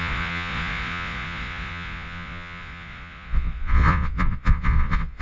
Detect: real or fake fake